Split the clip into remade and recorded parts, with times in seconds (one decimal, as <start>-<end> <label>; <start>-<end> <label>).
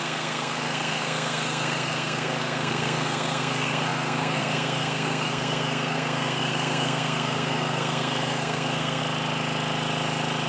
0.0-9.0 remade; 9.0-10.5 recorded